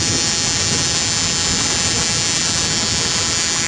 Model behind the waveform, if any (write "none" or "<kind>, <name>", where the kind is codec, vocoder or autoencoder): none